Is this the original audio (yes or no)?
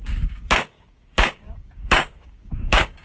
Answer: no